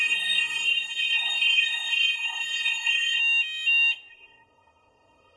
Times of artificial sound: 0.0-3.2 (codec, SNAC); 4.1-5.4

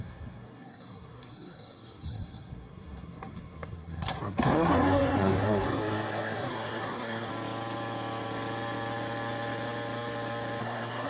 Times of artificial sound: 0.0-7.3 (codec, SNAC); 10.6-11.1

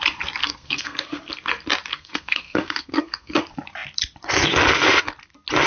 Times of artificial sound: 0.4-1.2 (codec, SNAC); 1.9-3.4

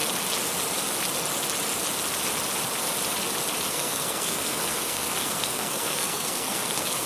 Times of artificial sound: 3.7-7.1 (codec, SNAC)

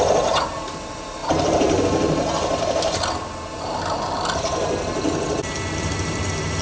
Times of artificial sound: none

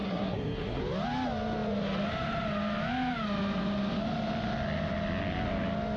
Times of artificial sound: 0.0-0.8 (codec, SNAC)